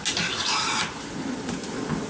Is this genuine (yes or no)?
yes